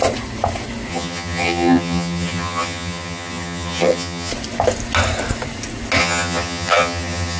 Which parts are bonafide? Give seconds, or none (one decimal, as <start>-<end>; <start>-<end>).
0.0-0.9; 4.3-6.0